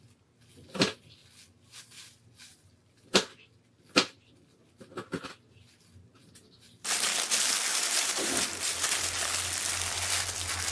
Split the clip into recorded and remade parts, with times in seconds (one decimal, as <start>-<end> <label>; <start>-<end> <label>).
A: 0.0-7.7 recorded; 7.7-9.0 remade; 9.0-10.7 recorded